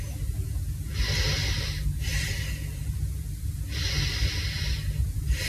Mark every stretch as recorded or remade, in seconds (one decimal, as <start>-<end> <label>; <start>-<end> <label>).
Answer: 0.0-5.5 recorded